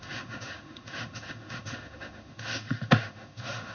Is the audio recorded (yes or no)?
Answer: no